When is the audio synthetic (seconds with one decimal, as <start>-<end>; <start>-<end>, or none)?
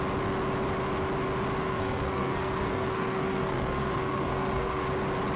1.6-4.8